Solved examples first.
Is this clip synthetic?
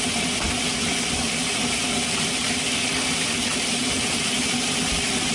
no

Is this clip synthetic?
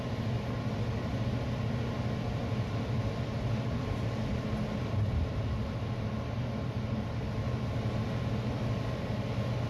no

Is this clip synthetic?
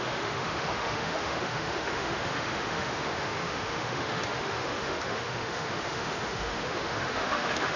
yes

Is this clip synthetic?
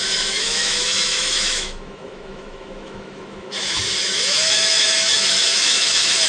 yes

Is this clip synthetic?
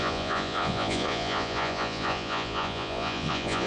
yes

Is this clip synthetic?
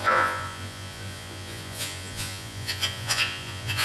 yes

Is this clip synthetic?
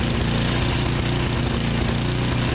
no